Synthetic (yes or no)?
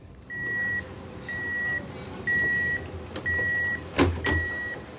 no